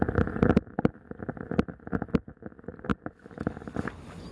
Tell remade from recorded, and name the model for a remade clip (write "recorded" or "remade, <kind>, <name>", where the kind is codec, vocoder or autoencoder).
recorded